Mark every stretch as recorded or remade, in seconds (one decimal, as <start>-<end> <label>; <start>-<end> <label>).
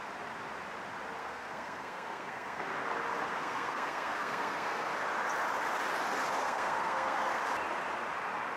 0.0-1.2 recorded; 1.2-2.7 remade; 2.7-3.3 recorded; 3.3-4.9 remade; 4.9-6.4 recorded; 6.4-7.4 remade; 7.4-8.6 recorded